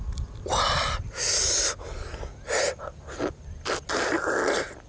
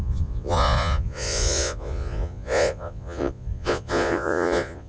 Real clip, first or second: first